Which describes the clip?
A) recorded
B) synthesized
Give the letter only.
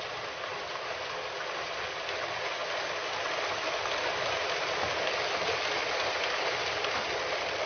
A